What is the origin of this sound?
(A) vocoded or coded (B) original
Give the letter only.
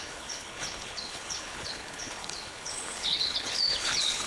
A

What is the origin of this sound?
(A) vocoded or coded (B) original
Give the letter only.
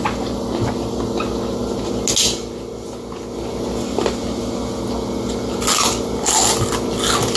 B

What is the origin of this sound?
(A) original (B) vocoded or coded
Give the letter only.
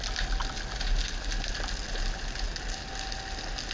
A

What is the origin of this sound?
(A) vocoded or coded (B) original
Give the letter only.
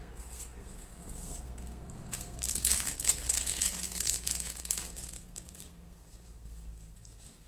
A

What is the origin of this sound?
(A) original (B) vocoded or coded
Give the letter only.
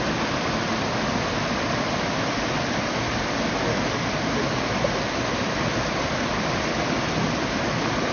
A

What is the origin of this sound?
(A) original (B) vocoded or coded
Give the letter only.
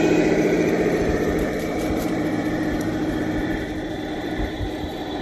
B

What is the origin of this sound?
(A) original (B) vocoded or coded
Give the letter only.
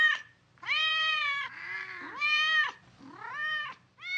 B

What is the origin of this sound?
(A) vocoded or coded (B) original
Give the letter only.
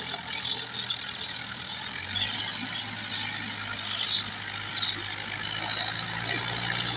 B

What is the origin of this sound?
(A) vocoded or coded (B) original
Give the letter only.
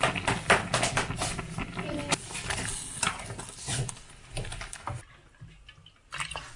B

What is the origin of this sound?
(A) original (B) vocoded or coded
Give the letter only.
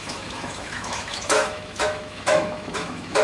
B